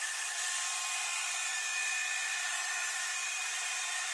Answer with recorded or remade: remade